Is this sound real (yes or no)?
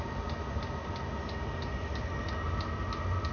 yes